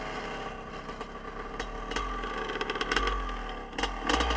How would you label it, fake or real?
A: real